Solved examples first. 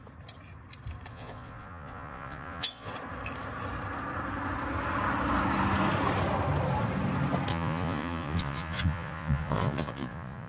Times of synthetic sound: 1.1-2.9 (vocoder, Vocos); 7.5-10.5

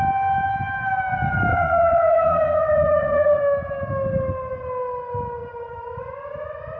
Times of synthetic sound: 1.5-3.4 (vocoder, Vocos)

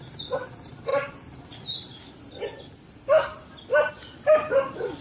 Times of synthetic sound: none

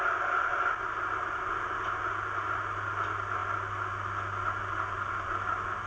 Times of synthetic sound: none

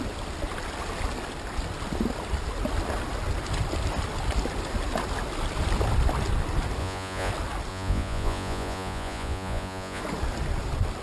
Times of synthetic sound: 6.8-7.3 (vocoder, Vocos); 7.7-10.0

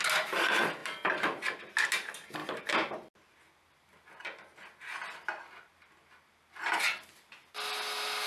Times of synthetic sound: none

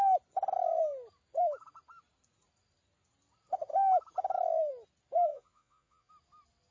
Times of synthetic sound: 5.3-6.1 (vocoder, Vocos)

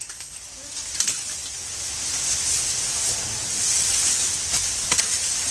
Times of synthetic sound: none